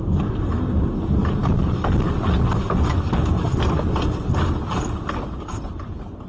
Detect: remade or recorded recorded